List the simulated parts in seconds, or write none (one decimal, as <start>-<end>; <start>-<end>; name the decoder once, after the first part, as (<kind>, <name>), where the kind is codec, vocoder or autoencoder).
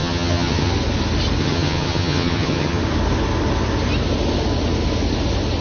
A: 0.0-0.7 (vocoder, HiFi-GAN); 1.4-2.8